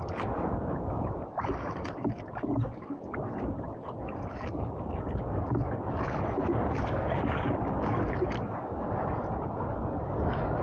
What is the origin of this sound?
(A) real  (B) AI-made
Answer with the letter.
B